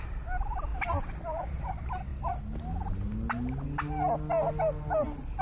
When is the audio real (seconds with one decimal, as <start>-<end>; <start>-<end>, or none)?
0.0-5.4